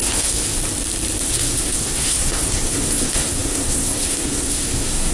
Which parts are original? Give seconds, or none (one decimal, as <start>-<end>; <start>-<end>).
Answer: 0.6-1.2